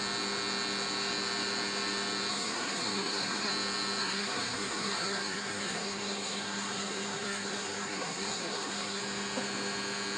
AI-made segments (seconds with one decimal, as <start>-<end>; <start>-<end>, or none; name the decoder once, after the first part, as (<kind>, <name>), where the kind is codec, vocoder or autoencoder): 2.3-3.5 (codec, SNAC); 4.0-9.0